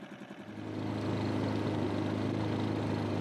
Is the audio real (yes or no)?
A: yes